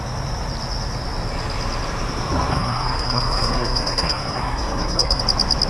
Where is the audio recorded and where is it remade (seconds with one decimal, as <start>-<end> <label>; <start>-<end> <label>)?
0.0-2.5 recorded; 2.5-5.2 remade; 5.2-5.7 recorded